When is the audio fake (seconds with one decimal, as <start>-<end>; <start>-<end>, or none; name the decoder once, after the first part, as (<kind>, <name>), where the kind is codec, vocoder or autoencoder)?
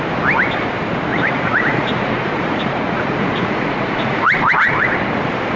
1.1-4.5 (vocoder, Vocos)